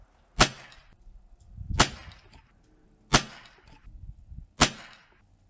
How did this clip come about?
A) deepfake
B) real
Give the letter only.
B